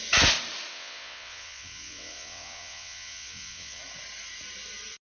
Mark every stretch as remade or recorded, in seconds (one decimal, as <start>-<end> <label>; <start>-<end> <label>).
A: 0.0-0.7 recorded; 0.7-3.8 remade; 3.8-5.2 recorded